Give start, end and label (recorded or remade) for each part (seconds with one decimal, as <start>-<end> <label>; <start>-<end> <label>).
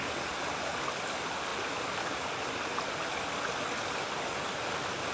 0.0-5.1 recorded